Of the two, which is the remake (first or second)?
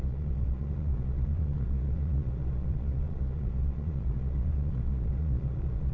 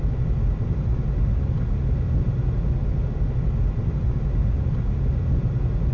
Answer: first